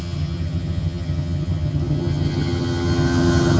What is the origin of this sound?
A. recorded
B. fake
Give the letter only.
B